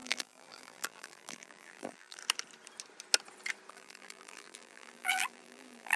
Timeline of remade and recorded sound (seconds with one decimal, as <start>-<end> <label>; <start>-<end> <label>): 0.0-2.2 remade; 2.2-3.7 recorded; 3.7-6.0 remade